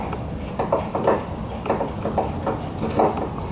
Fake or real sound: real